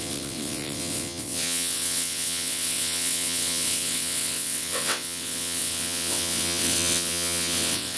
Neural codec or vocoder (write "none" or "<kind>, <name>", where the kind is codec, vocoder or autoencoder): vocoder, WaveNeXt